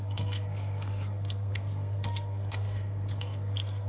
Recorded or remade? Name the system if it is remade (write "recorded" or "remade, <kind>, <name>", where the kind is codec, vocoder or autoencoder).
remade, codec, SNAC